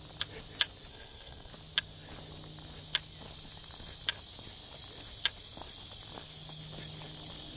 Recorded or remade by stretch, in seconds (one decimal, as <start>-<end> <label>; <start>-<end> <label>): 0.0-0.9 recorded; 0.9-1.5 remade; 1.5-7.6 recorded

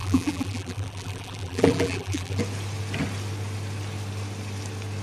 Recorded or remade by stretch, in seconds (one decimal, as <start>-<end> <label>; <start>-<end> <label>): 0.0-2.4 remade; 2.4-5.0 recorded

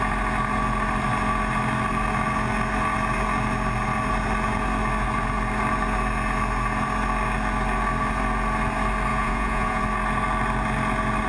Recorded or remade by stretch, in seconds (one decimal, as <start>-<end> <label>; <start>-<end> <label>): 0.0-9.1 recorded; 9.1-9.8 remade; 9.8-11.3 recorded

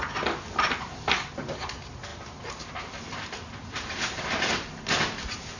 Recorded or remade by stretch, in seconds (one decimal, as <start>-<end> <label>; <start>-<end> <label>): 0.0-5.6 recorded

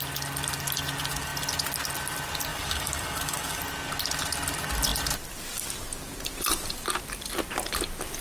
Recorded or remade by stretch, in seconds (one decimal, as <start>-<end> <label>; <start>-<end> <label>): 0.0-2.5 recorded; 2.5-3.6 remade; 3.6-8.2 recorded

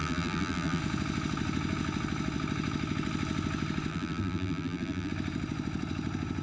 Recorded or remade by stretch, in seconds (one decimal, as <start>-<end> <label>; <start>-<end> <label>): 0.0-0.8 remade; 0.8-3.9 recorded; 3.9-5.1 remade; 5.1-6.4 recorded

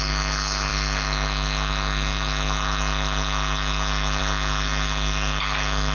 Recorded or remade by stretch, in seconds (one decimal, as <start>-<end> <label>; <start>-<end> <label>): 0.0-5.9 recorded

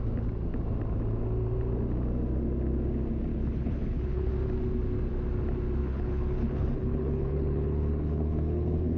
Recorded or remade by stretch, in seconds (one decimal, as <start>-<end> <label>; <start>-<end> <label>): 0.0-3.3 recorded; 3.3-4.3 remade; 4.3-5.8 recorded; 5.8-9.0 remade